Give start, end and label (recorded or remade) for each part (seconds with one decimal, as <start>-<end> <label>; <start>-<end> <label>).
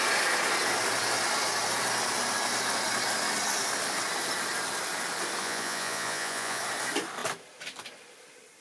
0.0-5.4 recorded; 5.4-6.6 remade; 6.6-8.6 recorded